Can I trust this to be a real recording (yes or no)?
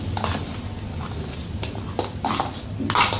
yes